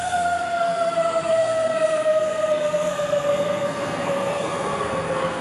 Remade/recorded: remade